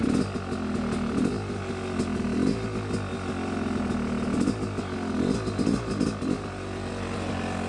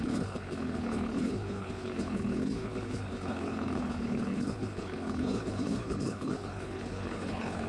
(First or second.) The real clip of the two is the first